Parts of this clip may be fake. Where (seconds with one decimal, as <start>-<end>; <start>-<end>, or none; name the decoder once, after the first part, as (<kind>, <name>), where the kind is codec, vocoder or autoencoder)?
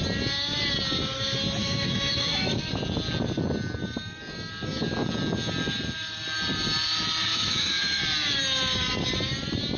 1.6-2.7 (autoencoder, DAC-VAE); 7.2-8.0